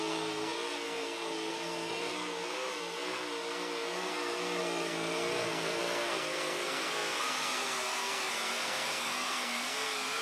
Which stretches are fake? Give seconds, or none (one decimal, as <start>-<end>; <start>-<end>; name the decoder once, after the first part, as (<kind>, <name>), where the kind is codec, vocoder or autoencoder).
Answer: 0.0-10.2 (codec, SNAC)